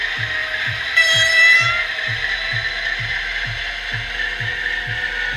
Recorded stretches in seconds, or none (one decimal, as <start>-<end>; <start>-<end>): 0.0-0.4; 2.2-5.4